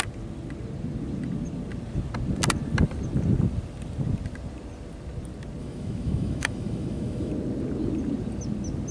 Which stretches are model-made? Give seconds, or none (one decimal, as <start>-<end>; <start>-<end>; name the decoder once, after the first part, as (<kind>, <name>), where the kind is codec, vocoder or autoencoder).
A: 5.6-7.3 (autoencoder, DAC-VAE)